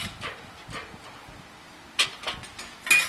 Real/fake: real